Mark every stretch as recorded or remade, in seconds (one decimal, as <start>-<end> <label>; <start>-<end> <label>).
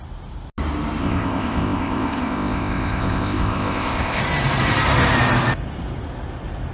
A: 0.0-1.0 recorded; 1.0-4.2 remade; 4.2-6.7 recorded